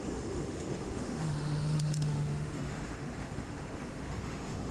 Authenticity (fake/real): fake